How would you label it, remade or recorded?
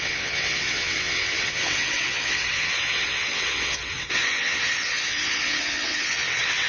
remade